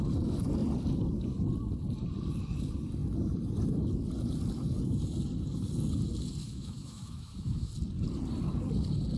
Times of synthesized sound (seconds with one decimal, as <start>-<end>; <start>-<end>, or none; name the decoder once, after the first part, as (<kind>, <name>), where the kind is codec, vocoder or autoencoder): 6.4-7.7 (autoencoder, DAC-VAE)